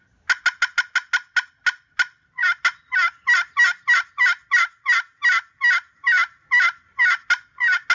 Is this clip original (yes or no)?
yes